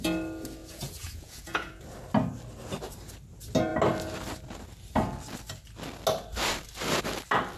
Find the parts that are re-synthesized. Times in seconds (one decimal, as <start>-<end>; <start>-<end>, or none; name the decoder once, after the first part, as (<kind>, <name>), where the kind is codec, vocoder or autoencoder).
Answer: 0.6-1.8 (vocoder, Vocos)